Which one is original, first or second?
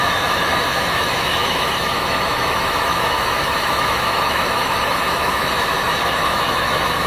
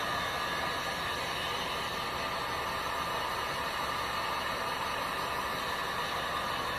second